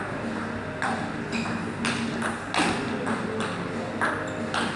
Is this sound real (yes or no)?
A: yes